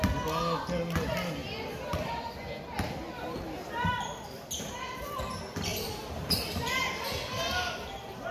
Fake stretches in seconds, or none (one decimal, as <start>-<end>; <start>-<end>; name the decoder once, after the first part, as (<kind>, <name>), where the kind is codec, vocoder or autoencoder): 1.4-2.1 (vocoder, BigVGAN v2); 5.7-6.7